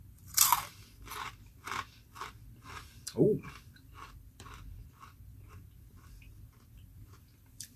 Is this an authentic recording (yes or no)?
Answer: no